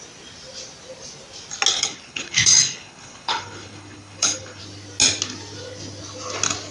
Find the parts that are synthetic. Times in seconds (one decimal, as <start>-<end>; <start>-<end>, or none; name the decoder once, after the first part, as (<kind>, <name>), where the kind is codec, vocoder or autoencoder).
1.7-4.6 (codec, HILCodec)